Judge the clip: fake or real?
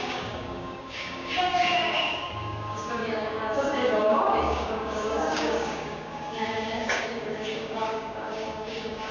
fake